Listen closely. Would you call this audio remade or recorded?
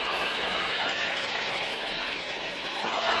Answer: remade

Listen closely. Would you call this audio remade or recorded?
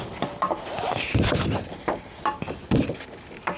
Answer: recorded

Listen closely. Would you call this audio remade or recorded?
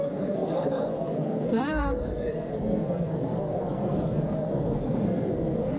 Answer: remade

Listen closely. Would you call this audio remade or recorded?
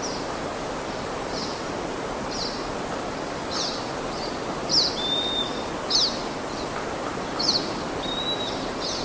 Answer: recorded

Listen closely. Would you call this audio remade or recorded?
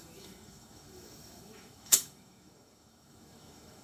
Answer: remade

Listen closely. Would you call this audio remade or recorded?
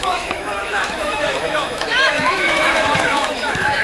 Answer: remade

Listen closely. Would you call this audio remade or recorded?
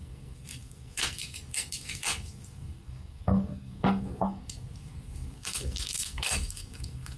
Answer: remade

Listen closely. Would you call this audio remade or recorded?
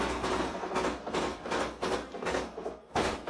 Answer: remade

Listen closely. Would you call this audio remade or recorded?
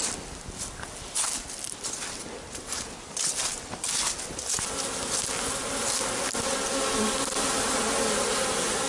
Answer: recorded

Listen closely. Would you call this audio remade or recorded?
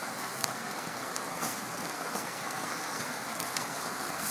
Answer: remade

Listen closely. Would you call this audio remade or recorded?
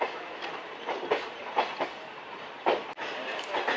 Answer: recorded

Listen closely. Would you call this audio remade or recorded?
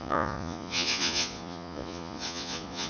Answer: remade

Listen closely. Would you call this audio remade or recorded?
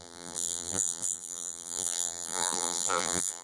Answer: remade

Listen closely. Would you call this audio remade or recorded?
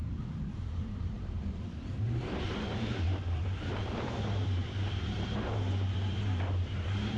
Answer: remade